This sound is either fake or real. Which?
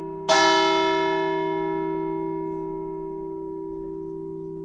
real